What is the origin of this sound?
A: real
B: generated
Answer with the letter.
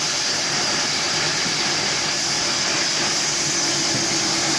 A